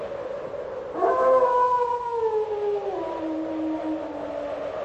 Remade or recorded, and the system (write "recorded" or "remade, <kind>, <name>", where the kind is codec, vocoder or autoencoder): recorded